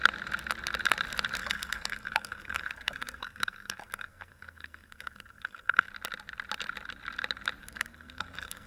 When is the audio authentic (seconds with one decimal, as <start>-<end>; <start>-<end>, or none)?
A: 0.0-1.4; 5.9-7.6